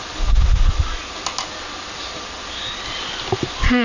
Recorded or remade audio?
recorded